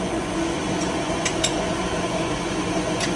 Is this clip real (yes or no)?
no